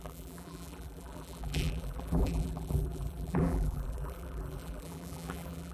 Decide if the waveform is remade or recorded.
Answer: remade